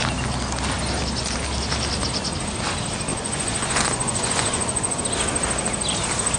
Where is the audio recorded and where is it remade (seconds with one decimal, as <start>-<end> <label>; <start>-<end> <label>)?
0.0-3.1 recorded; 3.1-5.0 remade; 5.0-6.4 recorded

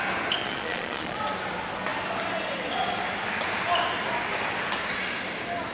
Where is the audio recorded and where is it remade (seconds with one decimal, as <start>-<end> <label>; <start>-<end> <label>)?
0.0-0.4 recorded; 0.4-1.2 remade; 1.2-5.7 recorded

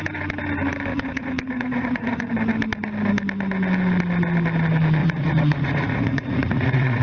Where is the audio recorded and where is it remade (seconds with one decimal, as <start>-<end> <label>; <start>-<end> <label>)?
0.0-0.9 recorded; 0.9-2.3 remade; 2.3-5.0 recorded; 5.0-7.0 remade

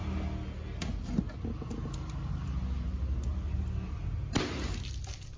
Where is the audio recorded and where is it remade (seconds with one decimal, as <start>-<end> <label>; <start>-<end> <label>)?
0.0-5.4 recorded

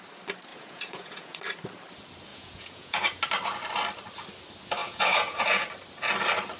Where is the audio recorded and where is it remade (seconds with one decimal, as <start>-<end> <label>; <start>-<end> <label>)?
0.0-0.5 recorded; 0.5-1.4 remade; 1.4-2.3 recorded; 2.3-3.2 remade; 3.2-4.8 recorded; 4.8-5.7 remade; 5.7-6.6 recorded